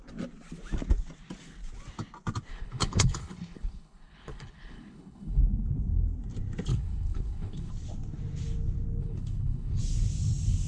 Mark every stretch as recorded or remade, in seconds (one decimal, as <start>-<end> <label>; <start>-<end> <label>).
0.0-2.5 recorded; 2.5-5.4 remade; 5.4-6.7 recorded; 6.7-7.7 remade; 7.7-9.0 recorded; 9.0-9.8 remade; 9.8-10.7 recorded